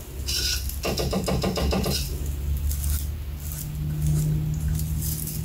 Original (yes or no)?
yes